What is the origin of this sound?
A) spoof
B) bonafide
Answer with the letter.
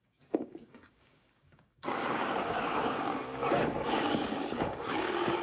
A